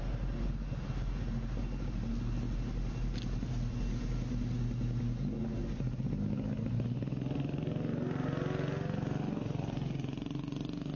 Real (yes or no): yes